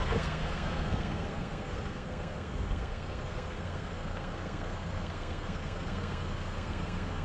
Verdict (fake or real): fake